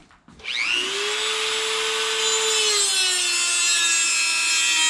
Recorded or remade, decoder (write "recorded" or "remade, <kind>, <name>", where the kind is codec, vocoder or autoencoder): recorded